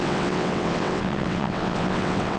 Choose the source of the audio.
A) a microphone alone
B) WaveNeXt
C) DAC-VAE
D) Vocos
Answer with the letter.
B